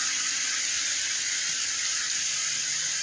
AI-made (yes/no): no